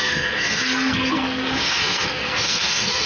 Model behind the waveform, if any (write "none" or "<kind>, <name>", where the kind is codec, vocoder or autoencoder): codec, SNAC